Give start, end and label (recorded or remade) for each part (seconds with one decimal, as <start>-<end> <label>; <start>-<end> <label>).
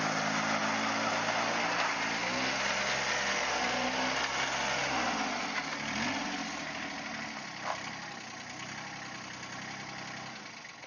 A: 0.0-10.9 recorded